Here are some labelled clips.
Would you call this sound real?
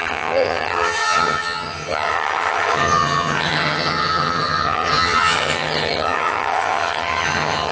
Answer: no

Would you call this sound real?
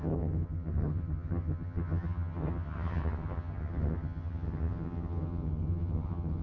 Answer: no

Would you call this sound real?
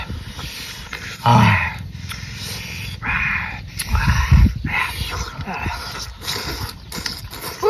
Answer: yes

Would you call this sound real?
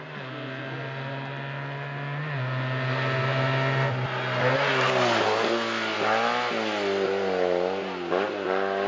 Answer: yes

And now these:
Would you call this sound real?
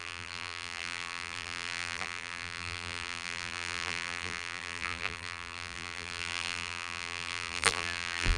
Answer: no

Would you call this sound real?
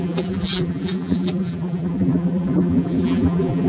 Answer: no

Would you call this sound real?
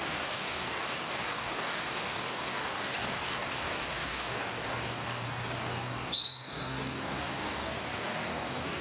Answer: no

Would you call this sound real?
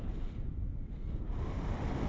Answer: yes